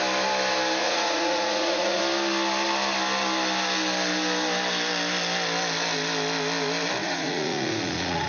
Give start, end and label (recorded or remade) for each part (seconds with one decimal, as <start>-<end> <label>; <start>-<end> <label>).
0.0-0.8 recorded; 0.8-2.0 remade; 2.0-7.0 recorded; 7.0-8.3 remade